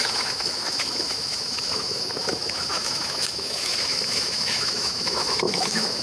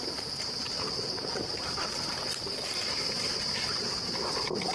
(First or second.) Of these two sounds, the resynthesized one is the first